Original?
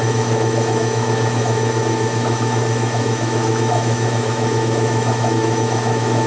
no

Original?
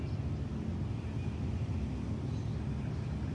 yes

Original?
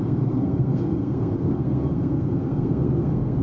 no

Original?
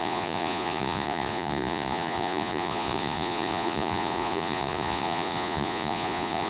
no